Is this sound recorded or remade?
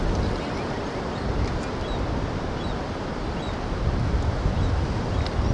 recorded